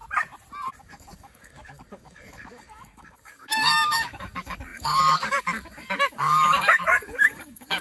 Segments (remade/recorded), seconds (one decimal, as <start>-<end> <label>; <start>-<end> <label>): 0.0-0.8 recorded; 0.8-7.8 remade